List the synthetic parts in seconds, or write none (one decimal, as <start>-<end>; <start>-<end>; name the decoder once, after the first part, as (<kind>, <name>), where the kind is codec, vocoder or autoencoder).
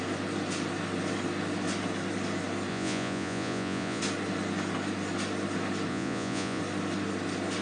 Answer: 2.7-4.0 (vocoder, Vocos); 5.9-6.6